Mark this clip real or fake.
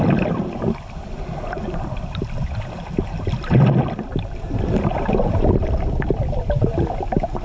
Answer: real